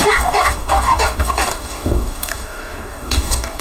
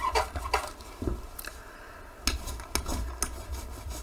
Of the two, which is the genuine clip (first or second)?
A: second